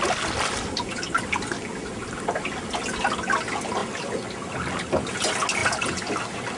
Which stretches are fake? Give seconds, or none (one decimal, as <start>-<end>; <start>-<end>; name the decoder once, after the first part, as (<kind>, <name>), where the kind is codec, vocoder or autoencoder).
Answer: none